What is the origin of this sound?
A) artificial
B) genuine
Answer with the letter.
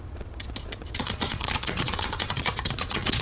A